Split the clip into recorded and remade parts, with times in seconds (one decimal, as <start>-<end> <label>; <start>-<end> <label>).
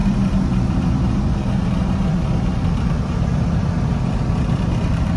0.0-1.3 remade; 1.3-2.1 recorded; 2.1-4.5 remade; 4.5-5.2 recorded